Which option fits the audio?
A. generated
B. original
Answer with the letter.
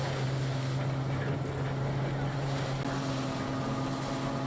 B